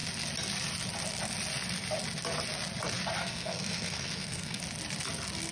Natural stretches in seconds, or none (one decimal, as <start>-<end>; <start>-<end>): 0.0-3.2; 4.6-5.5